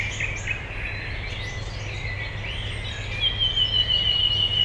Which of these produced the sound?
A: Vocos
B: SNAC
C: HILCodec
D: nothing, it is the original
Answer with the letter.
D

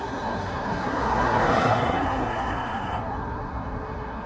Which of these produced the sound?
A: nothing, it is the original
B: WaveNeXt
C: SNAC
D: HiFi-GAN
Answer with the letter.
C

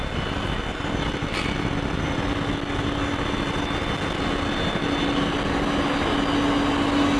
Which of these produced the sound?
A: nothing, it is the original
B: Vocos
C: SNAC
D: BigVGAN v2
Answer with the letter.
A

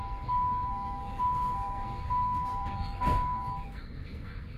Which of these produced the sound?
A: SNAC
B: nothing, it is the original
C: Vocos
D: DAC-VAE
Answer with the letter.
A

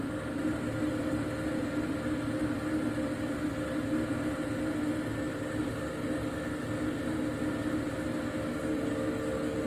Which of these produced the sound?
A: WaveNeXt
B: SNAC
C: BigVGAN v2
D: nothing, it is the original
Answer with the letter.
D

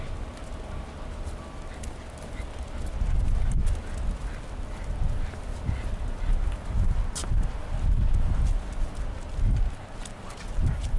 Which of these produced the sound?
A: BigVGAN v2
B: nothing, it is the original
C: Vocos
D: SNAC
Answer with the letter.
B